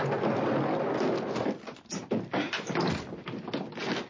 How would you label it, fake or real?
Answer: real